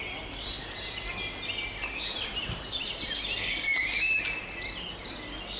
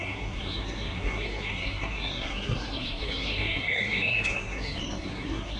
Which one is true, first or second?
first